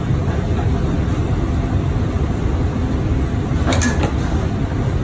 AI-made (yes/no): no